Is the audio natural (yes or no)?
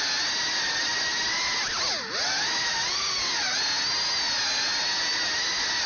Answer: yes